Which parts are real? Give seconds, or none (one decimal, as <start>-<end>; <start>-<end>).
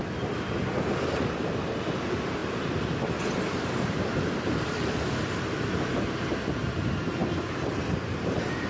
0.0-8.7